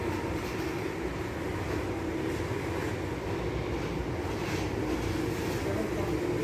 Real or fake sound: real